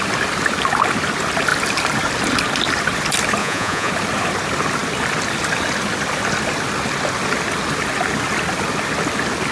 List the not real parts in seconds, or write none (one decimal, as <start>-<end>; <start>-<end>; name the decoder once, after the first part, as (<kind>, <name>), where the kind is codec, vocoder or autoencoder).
3.4-3.9 (vocoder, Vocos)